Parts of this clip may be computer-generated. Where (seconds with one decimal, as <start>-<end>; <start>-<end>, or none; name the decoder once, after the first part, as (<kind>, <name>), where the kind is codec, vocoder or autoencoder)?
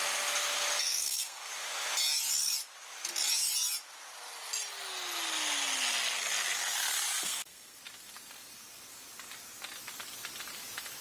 0.8-1.5 (codec, SNAC); 7.2-7.8